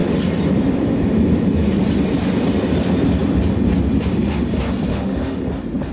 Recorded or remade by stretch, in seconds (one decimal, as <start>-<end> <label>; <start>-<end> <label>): 0.0-4.9 recorded; 4.9-5.5 remade; 5.5-5.9 recorded